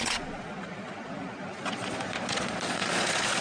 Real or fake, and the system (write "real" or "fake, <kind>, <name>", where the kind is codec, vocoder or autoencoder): fake, vocoder, Vocos